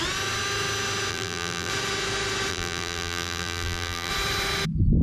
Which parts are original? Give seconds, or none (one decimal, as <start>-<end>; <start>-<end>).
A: 0.0-1.1; 1.7-2.5; 4.1-5.0